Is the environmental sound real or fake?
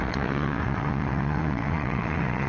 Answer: fake